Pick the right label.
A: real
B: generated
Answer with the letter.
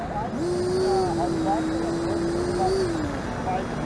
A